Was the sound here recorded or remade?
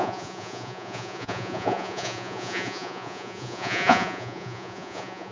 remade